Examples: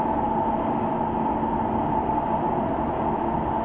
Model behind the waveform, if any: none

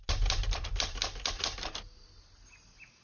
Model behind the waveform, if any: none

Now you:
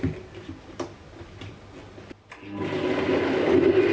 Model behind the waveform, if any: none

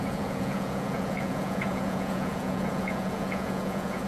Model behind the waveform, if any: vocoder, Vocos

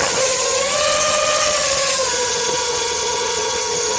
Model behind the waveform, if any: vocoder, HiFi-GAN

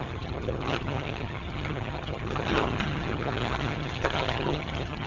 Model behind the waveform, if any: vocoder, HiFi-GAN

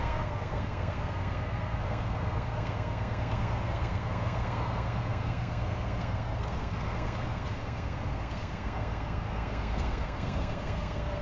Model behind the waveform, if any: codec, SNAC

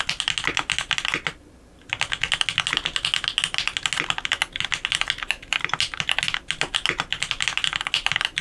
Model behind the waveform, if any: none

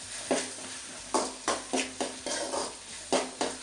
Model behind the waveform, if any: none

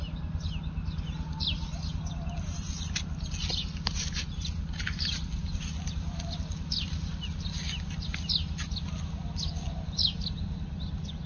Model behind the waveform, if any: none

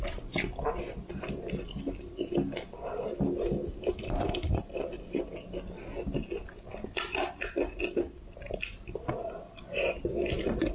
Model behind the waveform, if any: none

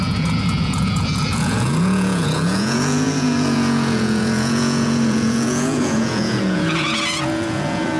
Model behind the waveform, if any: vocoder, Vocos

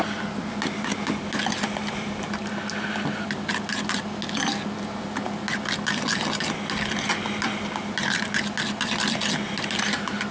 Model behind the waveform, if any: none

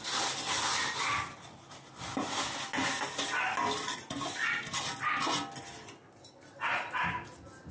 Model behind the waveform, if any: none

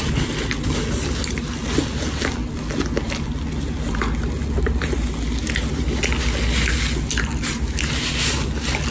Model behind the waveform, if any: none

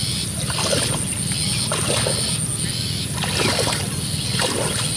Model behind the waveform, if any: none